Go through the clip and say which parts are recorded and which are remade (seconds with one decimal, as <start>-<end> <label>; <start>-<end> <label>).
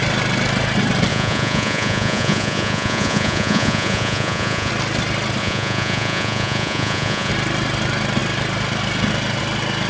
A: 0.0-1.1 recorded; 1.1-4.7 remade; 4.7-5.4 recorded; 5.4-7.3 remade; 7.3-9.9 recorded